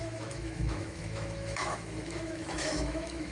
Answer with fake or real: fake